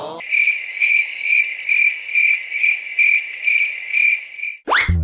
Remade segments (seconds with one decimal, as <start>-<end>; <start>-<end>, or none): 0.7-1.4